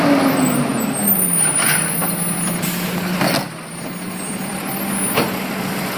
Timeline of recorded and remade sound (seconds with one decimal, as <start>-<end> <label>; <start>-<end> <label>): 0.0-6.0 recorded